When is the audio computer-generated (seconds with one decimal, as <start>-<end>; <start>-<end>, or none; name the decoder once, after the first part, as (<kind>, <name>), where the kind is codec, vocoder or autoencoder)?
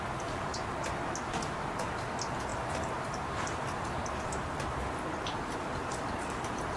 2.5-6.8 (vocoder, BigVGAN v2)